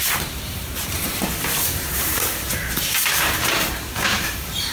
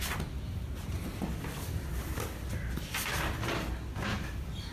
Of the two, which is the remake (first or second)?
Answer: first